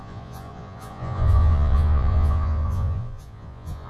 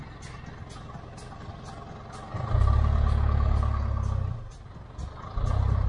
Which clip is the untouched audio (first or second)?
second